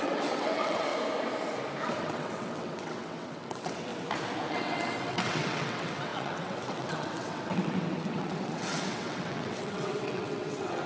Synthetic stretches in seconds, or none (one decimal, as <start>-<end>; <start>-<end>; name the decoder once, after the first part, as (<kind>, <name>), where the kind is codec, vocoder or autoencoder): 0.0-0.9 (vocoder, WaveNeXt); 2.0-3.9; 4.5-10.9